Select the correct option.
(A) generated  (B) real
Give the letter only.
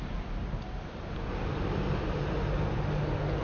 B